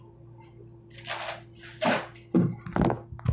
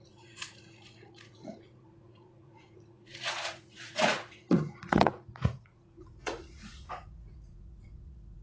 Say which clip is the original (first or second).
first